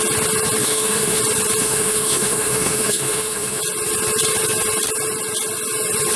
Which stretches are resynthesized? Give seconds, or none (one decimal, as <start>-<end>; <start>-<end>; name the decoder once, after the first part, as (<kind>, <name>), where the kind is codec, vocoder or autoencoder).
0.6-1.2 (autoencoder, DAC-VAE); 1.6-3.6

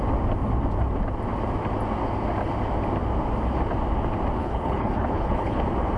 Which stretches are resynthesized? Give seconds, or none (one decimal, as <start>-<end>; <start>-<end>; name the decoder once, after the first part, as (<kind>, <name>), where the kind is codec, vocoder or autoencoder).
4.4-5.6 (codec, HILCodec)

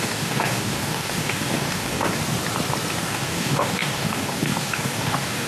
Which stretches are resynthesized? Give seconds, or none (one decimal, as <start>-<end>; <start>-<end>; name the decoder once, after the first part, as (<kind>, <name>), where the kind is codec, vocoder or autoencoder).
0.0-2.2 (codec, DAC); 3.0-5.5

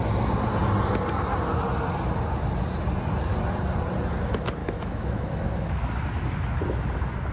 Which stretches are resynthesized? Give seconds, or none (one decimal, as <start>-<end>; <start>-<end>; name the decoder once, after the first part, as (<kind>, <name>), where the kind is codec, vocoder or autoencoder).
4.6-5.8 (autoencoder, DAC-VAE)

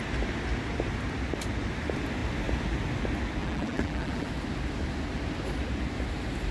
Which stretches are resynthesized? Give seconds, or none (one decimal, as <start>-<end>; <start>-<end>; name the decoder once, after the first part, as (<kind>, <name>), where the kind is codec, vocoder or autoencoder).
3.4-4.3 (vocoder, BigVGAN v2)

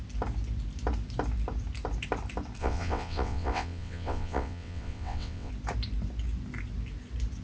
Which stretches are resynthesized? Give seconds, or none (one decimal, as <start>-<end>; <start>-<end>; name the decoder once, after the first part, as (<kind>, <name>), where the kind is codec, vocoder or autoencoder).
2.6-5.5 (vocoder, WaveNeXt)

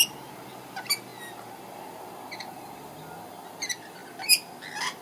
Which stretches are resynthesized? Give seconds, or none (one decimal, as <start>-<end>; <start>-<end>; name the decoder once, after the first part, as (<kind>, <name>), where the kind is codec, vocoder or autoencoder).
none